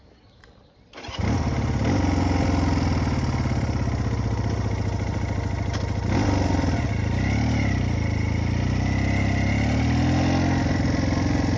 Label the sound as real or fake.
real